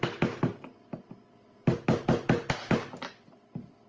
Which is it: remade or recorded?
recorded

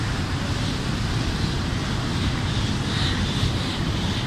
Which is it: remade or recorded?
remade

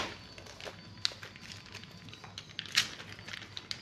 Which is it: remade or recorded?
recorded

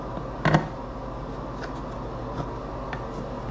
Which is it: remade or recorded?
recorded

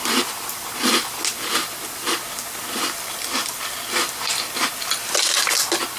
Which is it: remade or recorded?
recorded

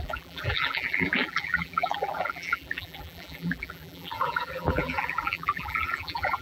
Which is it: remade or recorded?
remade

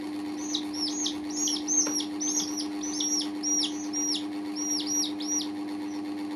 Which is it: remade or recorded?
recorded